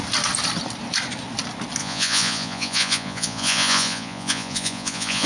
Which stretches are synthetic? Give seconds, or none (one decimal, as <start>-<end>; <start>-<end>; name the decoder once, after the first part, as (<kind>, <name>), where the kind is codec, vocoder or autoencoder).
1.8-5.3 (vocoder, Vocos)